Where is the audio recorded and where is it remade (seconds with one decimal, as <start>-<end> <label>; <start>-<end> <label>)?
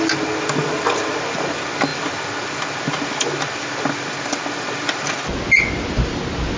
0.0-6.6 recorded